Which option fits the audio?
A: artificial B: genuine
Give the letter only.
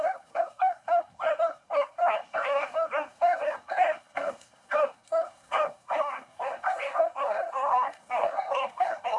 A